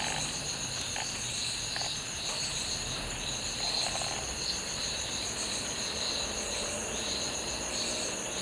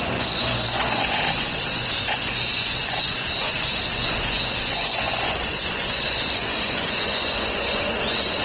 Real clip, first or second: first